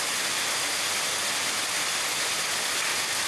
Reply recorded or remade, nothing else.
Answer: recorded